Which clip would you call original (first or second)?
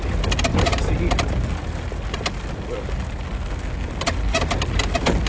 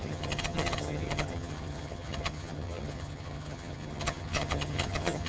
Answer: first